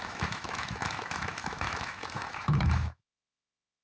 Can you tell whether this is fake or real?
fake